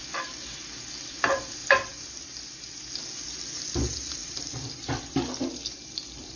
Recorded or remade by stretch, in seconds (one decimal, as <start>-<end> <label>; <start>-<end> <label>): 0.0-1.6 recorded; 1.6-2.9 remade; 2.9-4.2 recorded; 4.2-6.4 remade